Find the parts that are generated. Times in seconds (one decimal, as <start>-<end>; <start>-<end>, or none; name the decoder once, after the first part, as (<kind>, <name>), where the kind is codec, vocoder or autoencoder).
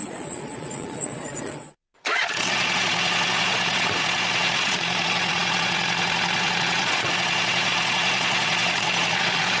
0.0-9.6 (vocoder, Vocos)